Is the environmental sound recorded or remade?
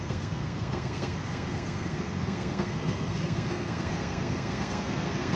remade